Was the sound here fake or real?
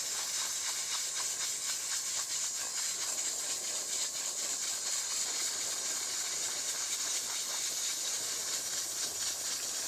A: real